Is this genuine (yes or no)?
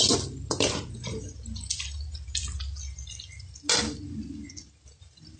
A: yes